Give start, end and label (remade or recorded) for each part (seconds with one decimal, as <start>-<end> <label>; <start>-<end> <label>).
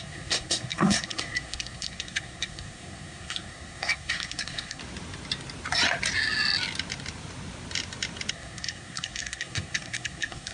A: 0.0-4.8 remade; 4.8-8.3 recorded; 8.3-10.5 remade